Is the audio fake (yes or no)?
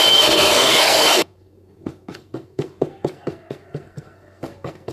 yes